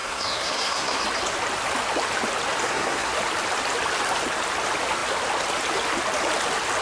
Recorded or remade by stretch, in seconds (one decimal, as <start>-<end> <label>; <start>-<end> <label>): 0.0-1.0 remade; 1.0-2.6 recorded; 2.6-3.1 remade; 3.1-6.8 recorded